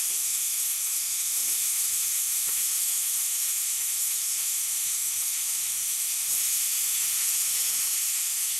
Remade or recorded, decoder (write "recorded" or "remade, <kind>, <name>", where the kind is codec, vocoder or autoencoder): remade, autoencoder, DAC-VAE